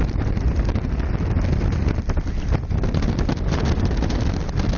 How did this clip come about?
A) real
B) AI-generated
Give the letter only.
A